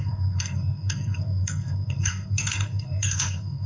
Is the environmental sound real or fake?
fake